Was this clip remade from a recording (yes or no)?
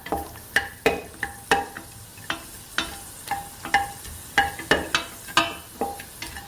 no